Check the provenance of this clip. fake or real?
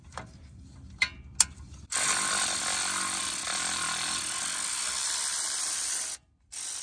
real